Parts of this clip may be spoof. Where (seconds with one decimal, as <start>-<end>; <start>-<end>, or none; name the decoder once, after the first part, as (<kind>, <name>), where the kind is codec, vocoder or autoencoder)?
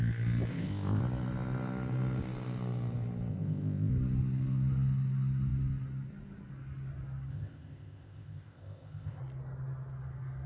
0.5-1.0 (codec, ZipCodec); 3.3-3.9; 7.3-9.2